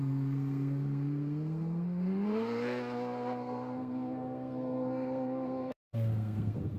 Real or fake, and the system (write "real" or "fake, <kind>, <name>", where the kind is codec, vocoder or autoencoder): fake, codec, SNAC